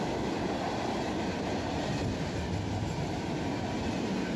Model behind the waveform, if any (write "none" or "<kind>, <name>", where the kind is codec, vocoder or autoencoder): none